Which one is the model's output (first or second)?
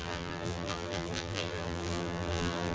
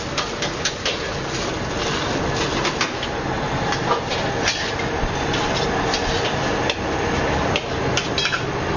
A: first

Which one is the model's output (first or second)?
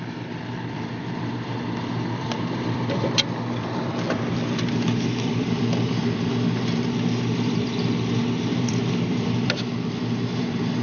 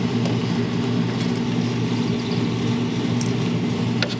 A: first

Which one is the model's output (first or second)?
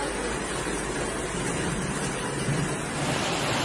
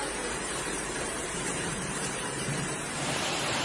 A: second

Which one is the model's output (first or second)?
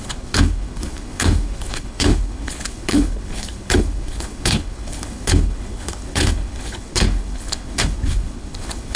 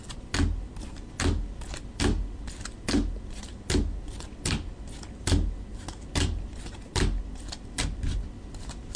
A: first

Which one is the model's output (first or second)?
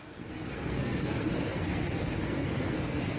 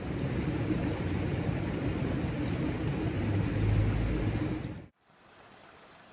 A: first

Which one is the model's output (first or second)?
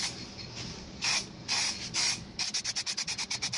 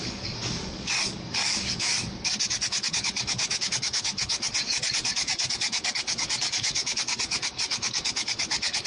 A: second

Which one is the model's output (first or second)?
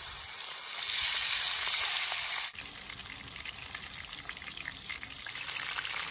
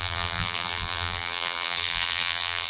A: second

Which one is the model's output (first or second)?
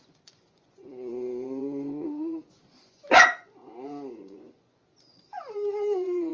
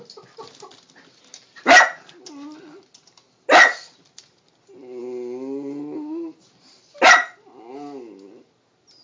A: first